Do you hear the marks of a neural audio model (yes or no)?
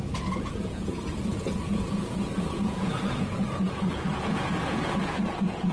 yes